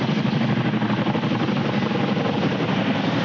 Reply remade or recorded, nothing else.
recorded